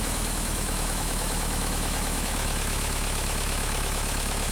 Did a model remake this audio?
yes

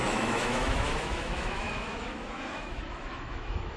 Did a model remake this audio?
yes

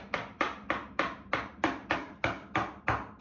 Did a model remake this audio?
no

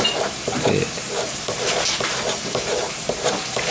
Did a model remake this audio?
no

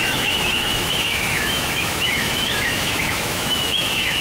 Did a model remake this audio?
yes